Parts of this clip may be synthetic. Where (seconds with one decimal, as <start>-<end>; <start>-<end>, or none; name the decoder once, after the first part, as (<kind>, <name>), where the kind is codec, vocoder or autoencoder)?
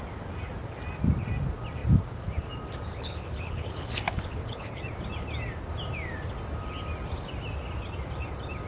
2.9-4.8 (codec, HILCodec)